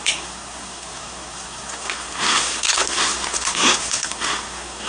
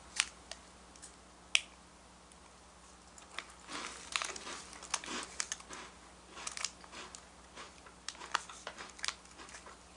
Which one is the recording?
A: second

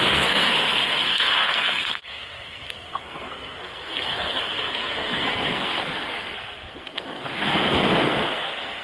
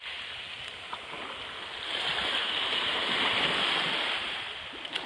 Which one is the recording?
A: second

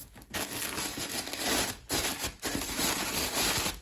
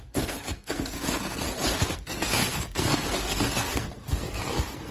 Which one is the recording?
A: first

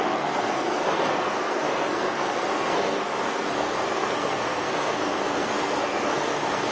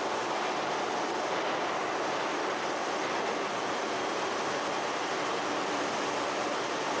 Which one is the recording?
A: second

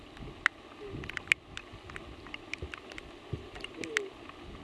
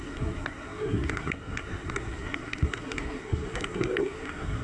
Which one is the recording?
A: first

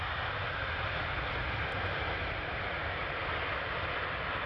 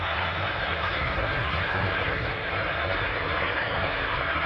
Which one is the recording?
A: first